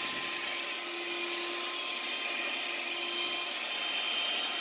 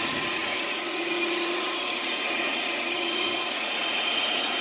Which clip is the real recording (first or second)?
first